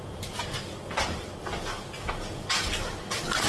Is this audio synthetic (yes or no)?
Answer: no